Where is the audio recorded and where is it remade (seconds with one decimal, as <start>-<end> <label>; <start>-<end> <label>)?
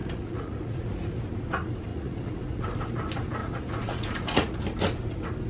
0.0-1.1 remade; 1.1-1.9 recorded; 1.9-2.6 remade; 2.6-3.4 recorded; 3.4-4.6 remade; 4.6-5.5 recorded